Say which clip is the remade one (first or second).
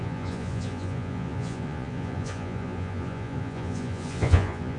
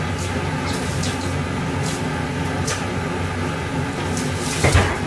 first